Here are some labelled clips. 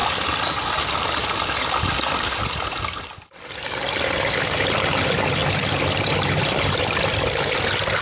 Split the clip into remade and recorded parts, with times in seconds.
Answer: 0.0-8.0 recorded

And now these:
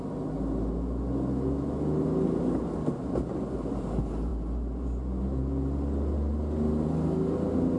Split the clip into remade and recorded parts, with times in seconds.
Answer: 0.0-7.8 recorded

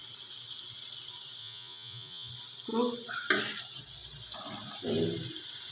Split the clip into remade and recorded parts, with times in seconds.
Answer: 0.0-1.4 recorded; 1.4-2.3 remade; 2.3-5.7 recorded

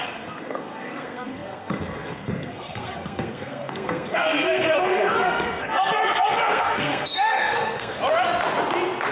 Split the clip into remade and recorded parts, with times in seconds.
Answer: 0.0-8.0 remade; 8.0-9.1 recorded

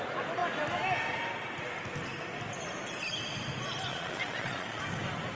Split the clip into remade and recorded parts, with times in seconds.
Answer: 0.0-3.9 recorded; 3.9-4.8 remade; 4.8-5.3 recorded

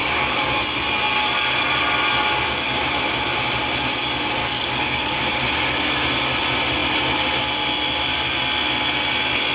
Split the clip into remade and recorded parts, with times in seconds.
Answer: 0.0-0.6 remade; 0.6-4.4 recorded; 4.4-5.2 remade; 5.2-9.5 recorded

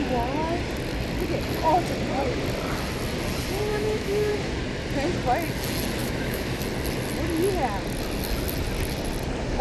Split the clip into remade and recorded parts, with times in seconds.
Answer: 0.0-3.7 recorded; 3.7-4.3 remade; 4.3-6.0 recorded; 6.0-6.6 remade; 6.6-9.6 recorded